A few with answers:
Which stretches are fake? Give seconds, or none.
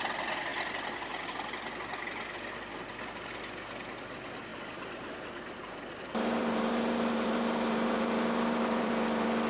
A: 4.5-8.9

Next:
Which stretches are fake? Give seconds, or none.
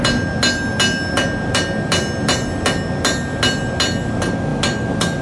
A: none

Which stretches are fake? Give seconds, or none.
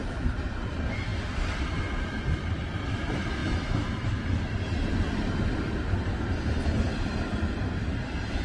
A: 0.0-0.7